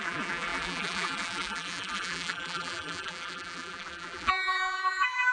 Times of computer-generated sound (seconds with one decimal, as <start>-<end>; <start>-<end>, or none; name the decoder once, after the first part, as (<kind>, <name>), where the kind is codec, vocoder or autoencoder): 0.0-5.3 (vocoder, BigVGAN v2)